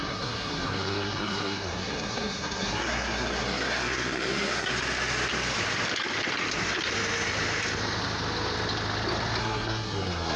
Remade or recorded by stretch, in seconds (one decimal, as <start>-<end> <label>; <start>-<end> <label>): 0.0-4.7 remade; 4.7-9.4 recorded; 9.4-10.4 remade